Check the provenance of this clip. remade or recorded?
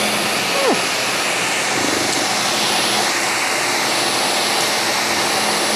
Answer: recorded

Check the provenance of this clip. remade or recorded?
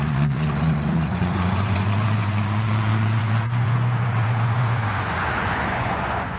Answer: remade